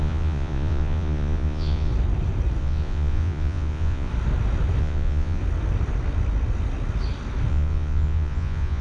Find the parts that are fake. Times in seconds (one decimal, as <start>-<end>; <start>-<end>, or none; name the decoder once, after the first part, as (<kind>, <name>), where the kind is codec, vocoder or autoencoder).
0.0-1.9 (vocoder, Vocos); 2.6-4.1; 4.8-5.4; 7.5-8.8